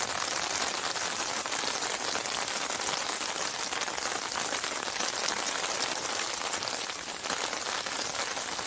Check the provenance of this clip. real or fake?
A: real